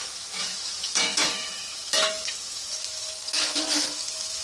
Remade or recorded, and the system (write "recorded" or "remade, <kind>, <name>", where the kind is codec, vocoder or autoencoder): remade, autoencoder, DAC-VAE